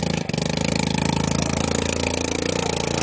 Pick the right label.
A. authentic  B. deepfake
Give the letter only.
A